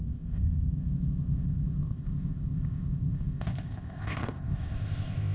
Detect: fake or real fake